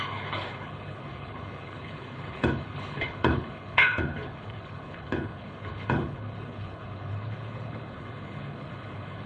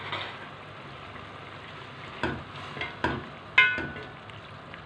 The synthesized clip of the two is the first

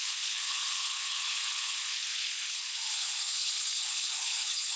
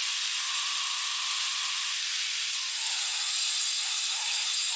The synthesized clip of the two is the first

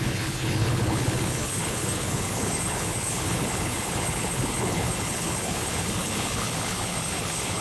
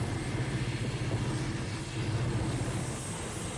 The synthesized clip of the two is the first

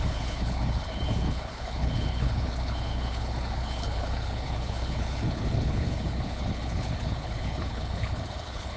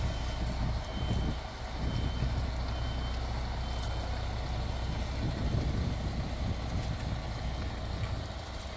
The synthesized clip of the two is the first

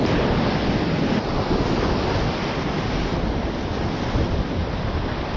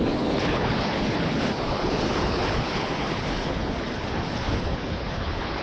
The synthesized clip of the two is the second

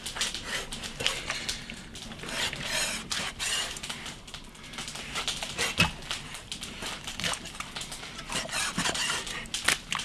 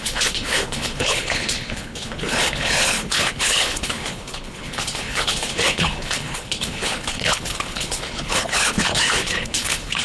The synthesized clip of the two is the second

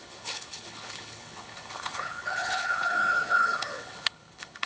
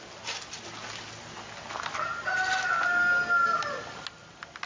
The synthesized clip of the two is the first